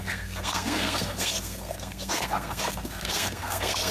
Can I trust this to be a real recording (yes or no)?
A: no